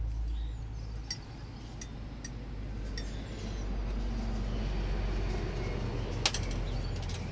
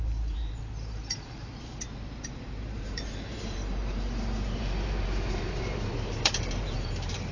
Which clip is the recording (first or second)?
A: first